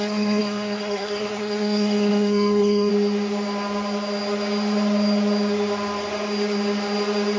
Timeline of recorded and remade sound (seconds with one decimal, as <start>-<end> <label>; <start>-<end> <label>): 0.0-2.9 remade; 2.9-7.4 recorded